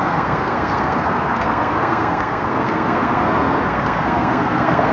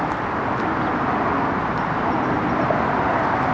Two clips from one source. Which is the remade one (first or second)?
first